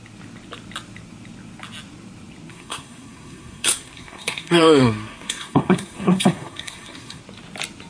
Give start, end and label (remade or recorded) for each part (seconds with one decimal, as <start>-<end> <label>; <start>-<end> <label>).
0.0-2.5 recorded; 2.5-7.2 remade; 7.2-7.9 recorded